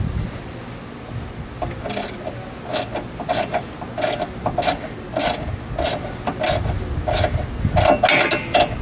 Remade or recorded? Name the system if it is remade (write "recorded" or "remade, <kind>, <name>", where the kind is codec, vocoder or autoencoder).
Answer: recorded